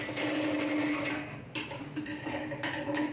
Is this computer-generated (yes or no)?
no